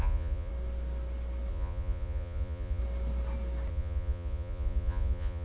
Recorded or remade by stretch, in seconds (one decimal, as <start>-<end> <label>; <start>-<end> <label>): 0.0-0.5 remade; 0.5-1.5 recorded; 1.5-2.8 remade; 2.8-3.7 recorded; 3.7-5.4 remade